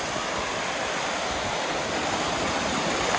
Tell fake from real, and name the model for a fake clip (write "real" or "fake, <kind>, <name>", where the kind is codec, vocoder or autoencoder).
real